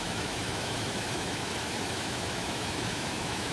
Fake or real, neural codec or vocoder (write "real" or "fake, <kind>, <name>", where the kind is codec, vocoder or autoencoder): fake, autoencoder, DAC-VAE